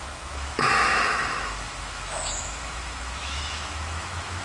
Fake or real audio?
fake